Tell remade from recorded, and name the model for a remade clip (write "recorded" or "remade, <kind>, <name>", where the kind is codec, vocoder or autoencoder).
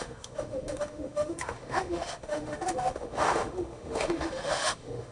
remade, autoencoder, DAC-VAE